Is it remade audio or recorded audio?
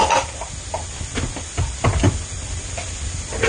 recorded